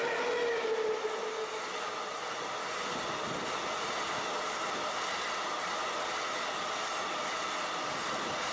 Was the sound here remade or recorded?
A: recorded